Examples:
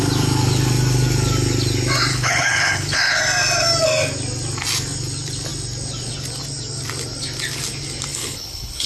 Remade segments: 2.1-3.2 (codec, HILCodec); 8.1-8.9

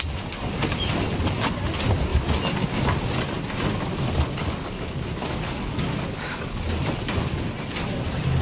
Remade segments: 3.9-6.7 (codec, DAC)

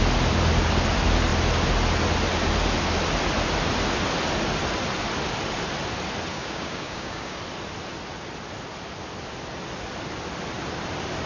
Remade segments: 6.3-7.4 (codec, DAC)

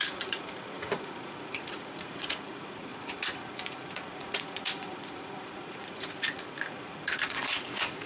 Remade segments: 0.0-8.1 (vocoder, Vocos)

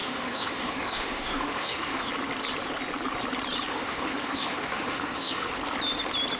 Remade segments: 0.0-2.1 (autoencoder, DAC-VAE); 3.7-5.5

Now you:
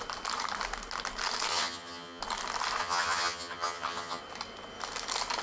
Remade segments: 1.5-2.2 (vocoder, HiFi-GAN); 2.8-4.2

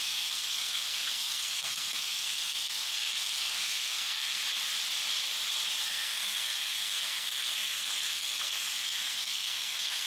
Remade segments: 0.0-4.4 (codec, SNAC); 5.8-10.1